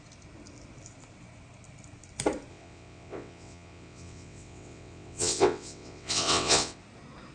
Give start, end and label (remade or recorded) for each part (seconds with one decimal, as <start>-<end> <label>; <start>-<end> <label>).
0.0-2.5 recorded; 2.5-6.8 remade; 6.8-7.3 recorded